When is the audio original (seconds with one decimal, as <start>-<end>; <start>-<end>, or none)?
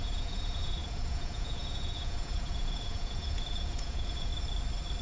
4.3-5.0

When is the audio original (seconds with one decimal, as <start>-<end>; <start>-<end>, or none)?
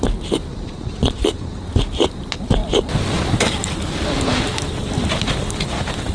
0.0-0.5; 1.6-6.1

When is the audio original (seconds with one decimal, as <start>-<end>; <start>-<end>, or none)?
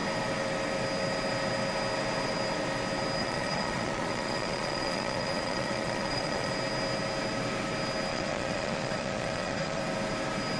0.0-3.2; 6.5-8.1; 9.8-10.6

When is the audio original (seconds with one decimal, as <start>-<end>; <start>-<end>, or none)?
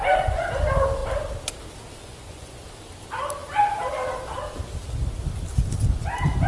0.0-2.0; 2.6-6.5